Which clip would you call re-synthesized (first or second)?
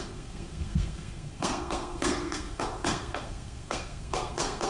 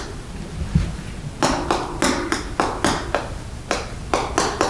first